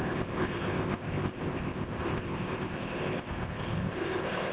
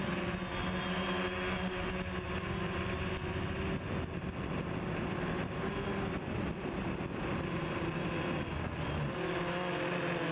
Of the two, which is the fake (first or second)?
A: first